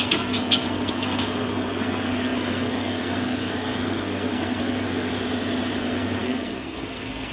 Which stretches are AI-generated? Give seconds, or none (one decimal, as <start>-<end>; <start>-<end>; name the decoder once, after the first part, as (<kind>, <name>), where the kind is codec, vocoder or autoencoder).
0.0-5.1 (codec, SNAC); 5.8-7.3